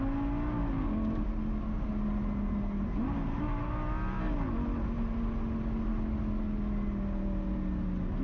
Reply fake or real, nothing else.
real